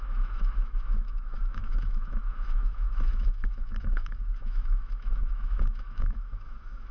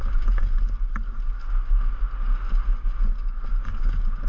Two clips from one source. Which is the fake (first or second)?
first